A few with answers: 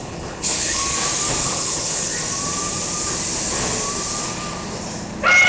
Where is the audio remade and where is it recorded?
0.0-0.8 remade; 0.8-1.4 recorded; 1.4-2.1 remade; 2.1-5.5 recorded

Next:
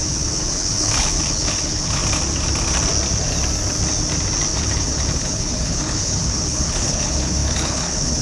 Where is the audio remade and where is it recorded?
0.0-2.0 remade; 2.0-4.6 recorded; 4.6-8.2 remade

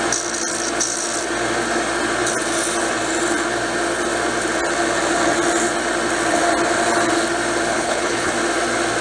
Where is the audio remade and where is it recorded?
0.0-7.7 recorded; 7.7-8.3 remade; 8.3-9.0 recorded

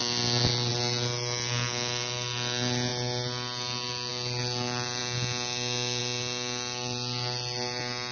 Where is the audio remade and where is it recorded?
0.0-8.1 recorded